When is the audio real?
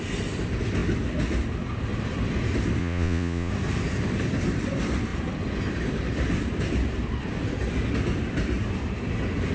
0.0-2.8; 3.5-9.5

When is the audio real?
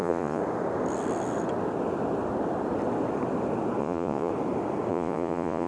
0.4-3.8; 4.3-4.9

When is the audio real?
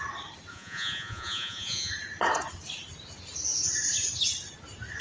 0.0-0.5; 1.9-5.0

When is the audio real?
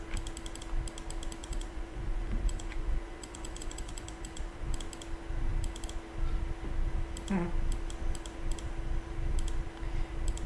0.0-1.4; 4.7-10.5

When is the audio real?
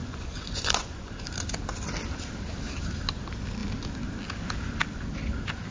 1.1-5.7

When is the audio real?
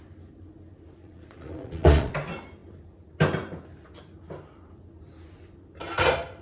0.0-1.0; 2.1-6.4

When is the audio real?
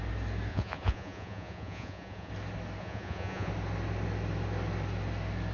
0.0-0.5; 2.3-2.8; 3.5-5.5